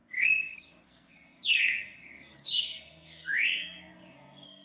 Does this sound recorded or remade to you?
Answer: remade